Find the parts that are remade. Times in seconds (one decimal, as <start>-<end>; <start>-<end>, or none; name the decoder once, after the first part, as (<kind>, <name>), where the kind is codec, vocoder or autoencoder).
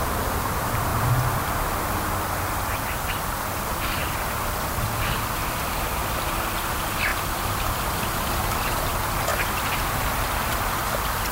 none